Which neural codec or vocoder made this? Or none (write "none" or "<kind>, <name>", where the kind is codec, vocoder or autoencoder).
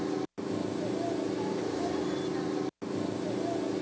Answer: none